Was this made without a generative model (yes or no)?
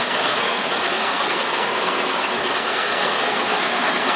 no